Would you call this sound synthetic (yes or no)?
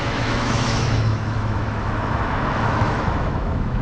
yes